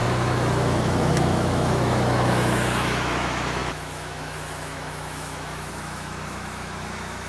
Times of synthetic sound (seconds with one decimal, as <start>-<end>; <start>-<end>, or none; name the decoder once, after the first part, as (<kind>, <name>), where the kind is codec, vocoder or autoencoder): 0.0-7.3 (autoencoder, DAC-VAE)